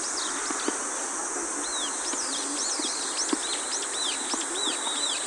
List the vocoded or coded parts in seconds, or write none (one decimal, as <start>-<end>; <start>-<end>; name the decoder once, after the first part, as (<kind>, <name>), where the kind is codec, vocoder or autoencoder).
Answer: none